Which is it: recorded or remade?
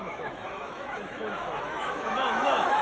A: remade